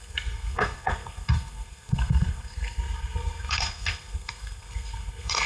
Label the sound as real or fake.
fake